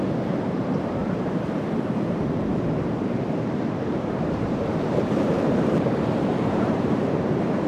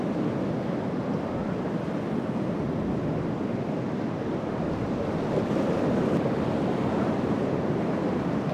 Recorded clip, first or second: second